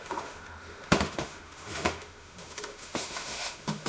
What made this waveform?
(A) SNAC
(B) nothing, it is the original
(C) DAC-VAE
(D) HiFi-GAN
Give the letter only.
C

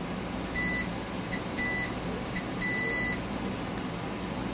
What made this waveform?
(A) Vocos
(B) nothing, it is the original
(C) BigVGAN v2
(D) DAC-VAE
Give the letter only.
B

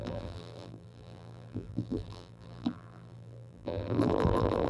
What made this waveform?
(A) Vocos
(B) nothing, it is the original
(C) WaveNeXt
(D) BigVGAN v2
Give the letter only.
D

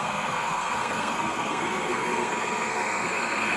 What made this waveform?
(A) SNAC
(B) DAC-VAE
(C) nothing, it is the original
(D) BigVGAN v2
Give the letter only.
A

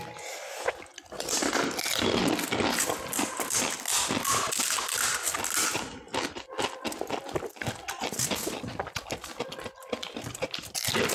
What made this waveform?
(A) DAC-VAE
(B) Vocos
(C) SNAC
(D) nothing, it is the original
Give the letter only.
D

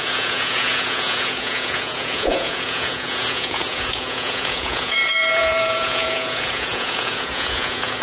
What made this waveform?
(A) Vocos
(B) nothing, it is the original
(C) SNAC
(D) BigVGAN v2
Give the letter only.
A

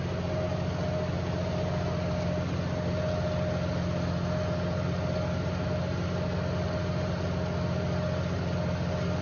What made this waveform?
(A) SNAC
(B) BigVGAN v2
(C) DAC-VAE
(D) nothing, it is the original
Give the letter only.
D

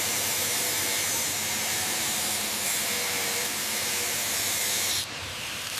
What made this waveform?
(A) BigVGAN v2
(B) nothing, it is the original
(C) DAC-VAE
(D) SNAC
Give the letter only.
A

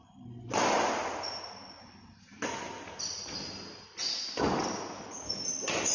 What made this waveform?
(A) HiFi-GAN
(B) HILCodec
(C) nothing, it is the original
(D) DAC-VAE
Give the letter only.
C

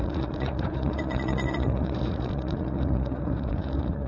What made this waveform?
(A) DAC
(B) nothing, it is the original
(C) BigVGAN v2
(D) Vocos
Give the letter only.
D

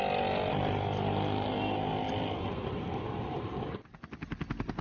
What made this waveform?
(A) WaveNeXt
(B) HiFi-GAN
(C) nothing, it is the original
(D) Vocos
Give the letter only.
C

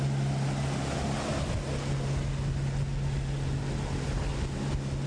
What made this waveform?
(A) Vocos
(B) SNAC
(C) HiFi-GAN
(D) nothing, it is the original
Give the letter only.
D